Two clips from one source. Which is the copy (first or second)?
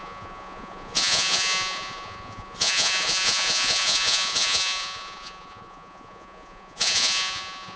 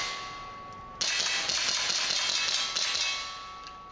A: first